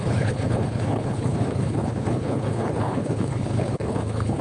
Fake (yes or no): yes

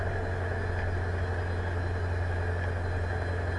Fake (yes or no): no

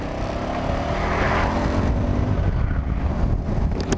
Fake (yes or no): no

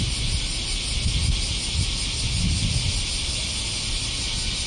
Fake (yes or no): no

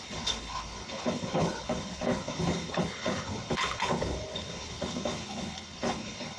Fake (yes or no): yes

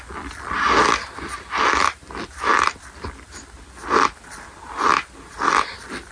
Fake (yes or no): no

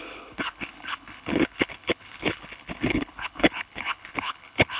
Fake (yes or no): yes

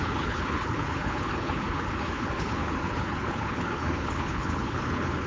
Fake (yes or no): yes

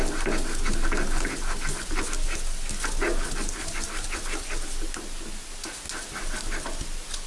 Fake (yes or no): no